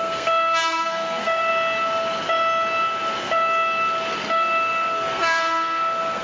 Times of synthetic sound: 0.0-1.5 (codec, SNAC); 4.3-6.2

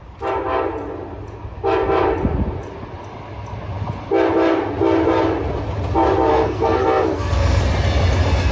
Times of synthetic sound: 6.3-7.6 (codec, SNAC)

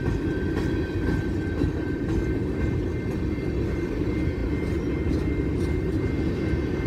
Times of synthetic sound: none

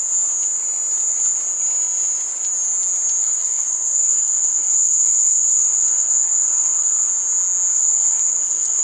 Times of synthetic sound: 3.2-7.1 (codec, SNAC); 7.7-8.8

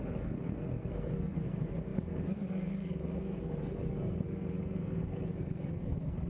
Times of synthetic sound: 0.0-6.3 (codec, SNAC)

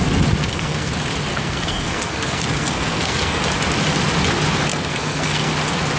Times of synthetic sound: 0.4-0.9 (codec, SNAC); 1.3-3.4; 4.7-5.5

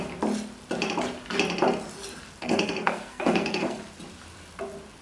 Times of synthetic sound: 2.4-3.8 (codec, SNAC)

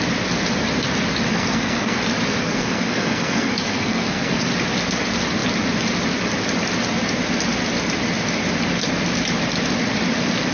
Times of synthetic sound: 1.3-2.0 (codec, SNAC); 2.4-4.5